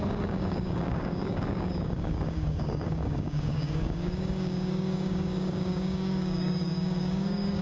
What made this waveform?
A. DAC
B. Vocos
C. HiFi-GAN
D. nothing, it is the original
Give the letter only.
A